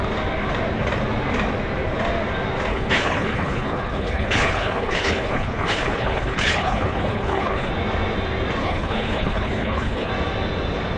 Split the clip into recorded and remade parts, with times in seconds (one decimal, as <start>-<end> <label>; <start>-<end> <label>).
0.0-2.7 recorded; 2.7-7.7 remade; 7.7-8.6 recorded; 8.6-10.1 remade; 10.1-11.0 recorded